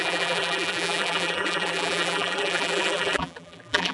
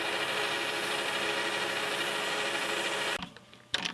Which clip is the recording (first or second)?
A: second